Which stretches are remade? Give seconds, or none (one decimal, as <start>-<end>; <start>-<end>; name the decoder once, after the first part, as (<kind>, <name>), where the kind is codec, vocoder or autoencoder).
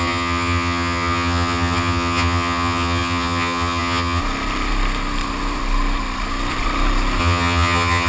0.0-4.2 (vocoder, HiFi-GAN); 7.2-8.1